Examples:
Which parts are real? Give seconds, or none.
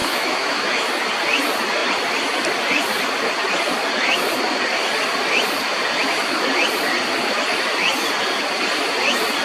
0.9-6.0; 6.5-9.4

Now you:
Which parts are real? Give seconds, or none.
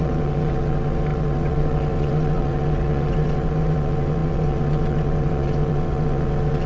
none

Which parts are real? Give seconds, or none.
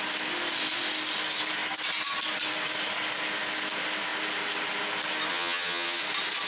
0.0-5.3; 6.0-6.5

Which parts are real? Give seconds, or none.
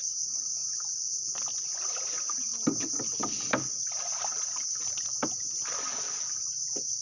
0.0-7.0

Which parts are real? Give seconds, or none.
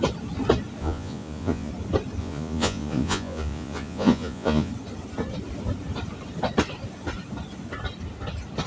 0.0-0.8; 1.7-2.2; 4.7-8.7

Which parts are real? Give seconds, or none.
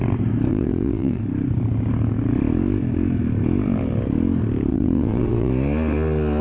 0.0-0.5; 1.2-4.7; 5.5-6.4